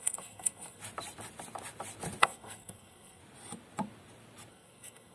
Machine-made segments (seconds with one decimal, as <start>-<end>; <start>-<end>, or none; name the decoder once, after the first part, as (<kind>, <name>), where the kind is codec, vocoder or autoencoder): 0.0-0.8 (codec, SNAC); 2.2-3.2; 4.5-5.1